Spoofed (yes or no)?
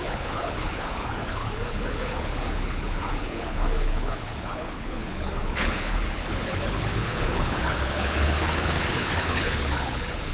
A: yes